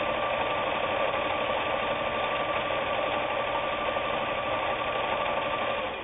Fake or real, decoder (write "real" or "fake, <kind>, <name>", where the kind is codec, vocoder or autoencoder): real